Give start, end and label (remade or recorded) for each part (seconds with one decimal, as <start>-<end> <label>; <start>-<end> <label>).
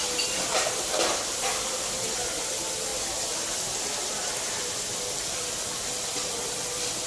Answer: 0.0-7.1 recorded